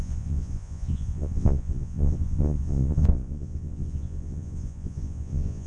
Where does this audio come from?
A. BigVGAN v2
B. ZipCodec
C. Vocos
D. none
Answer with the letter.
C